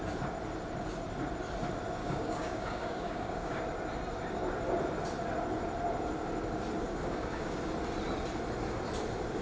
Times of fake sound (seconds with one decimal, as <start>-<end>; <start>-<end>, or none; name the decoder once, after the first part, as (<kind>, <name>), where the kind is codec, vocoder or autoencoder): 2.0-3.6 (codec, DAC); 6.9-7.6